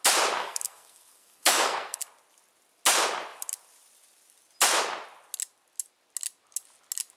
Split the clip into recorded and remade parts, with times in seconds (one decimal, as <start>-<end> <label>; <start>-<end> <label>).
0.0-0.4 recorded; 0.4-2.0 remade; 2.0-7.2 recorded